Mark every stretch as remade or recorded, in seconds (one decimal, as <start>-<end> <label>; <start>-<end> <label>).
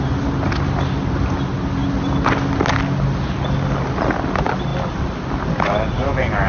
0.0-6.5 recorded